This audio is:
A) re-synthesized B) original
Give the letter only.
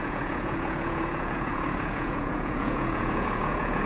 A